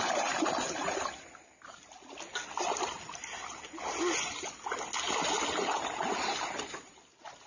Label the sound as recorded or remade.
recorded